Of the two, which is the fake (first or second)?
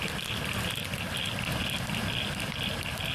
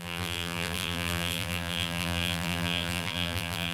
second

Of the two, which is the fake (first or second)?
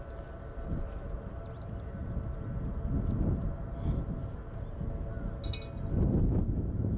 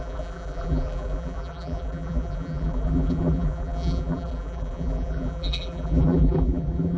second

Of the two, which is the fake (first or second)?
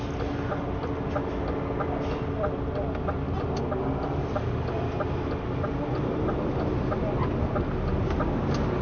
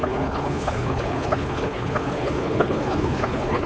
second